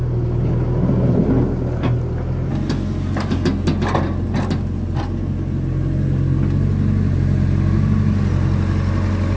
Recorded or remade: recorded